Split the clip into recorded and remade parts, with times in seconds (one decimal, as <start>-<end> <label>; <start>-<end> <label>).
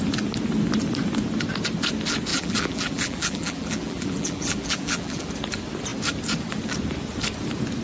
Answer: 0.0-2.3 recorded; 2.3-5.3 remade; 5.3-7.8 recorded